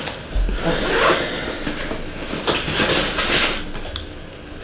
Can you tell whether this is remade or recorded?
recorded